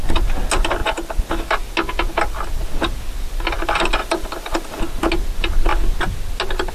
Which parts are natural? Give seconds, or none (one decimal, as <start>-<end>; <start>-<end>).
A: 0.0-0.8; 1.3-4.0; 4.8-6.7